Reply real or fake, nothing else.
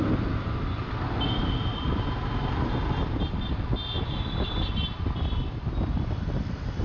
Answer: real